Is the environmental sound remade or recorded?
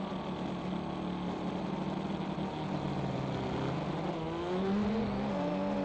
recorded